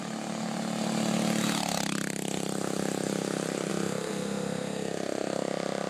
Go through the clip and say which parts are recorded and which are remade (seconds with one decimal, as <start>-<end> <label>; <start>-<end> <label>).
0.0-3.7 recorded; 3.7-5.9 remade